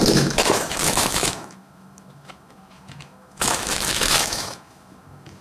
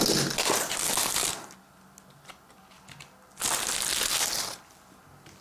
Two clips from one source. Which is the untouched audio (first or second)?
second